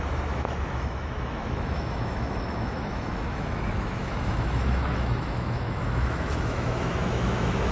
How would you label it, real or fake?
fake